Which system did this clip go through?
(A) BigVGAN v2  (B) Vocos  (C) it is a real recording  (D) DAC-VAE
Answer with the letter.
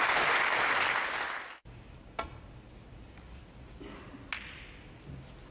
C